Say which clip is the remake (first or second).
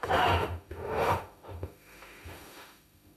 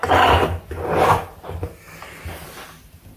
first